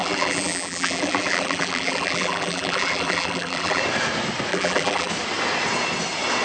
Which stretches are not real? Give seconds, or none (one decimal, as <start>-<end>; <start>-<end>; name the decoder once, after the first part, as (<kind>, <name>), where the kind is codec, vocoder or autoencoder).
0.0-3.8 (vocoder, BigVGAN v2); 4.5-5.1